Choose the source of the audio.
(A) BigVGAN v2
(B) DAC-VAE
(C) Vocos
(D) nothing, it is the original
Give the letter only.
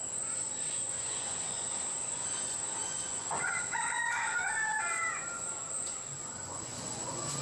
C